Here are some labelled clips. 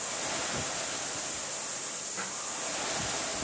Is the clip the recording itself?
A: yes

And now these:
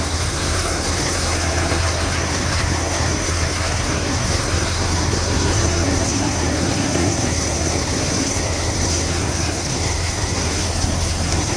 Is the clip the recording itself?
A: no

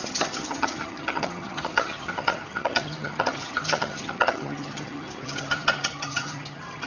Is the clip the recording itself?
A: no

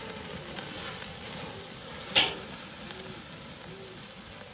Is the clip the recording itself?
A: yes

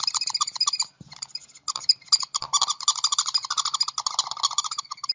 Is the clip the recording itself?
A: yes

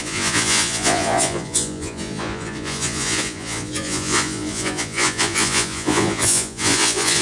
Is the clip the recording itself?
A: no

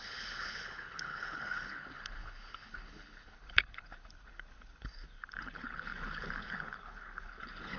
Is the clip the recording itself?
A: no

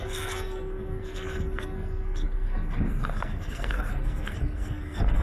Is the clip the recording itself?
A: no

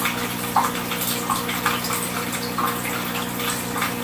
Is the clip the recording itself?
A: yes